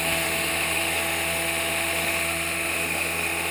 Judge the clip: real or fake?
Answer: fake